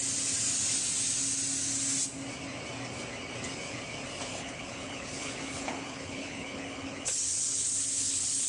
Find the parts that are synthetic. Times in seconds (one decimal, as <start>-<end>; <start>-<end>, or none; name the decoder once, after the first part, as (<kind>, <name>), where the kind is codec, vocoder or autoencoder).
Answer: 4.3-8.5 (codec, HILCodec)